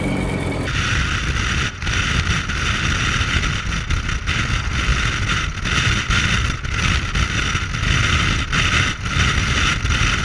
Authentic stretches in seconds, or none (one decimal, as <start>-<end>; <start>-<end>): 0.0-10.2